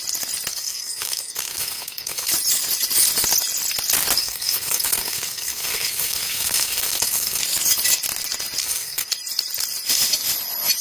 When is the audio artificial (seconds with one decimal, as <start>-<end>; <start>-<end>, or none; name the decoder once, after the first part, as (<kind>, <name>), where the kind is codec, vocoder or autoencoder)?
0.5-2.3 (codec, SNAC); 4.2-7.4; 8.6-9.1